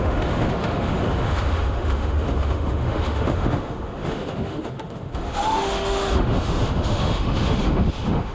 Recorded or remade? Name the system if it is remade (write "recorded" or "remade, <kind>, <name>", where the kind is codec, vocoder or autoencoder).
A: remade, autoencoder, DAC-VAE